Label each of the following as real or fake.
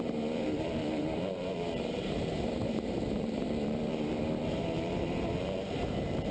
fake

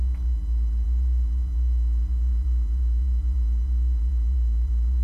fake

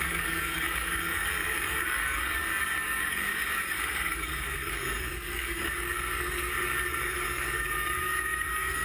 fake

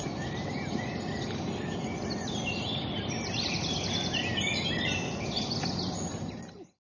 real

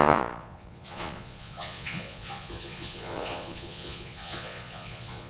fake